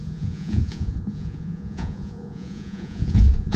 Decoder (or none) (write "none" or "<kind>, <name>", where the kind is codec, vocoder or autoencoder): vocoder, Vocos